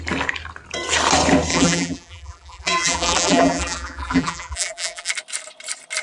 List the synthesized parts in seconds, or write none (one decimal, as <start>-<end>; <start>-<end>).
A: 1.5-5.1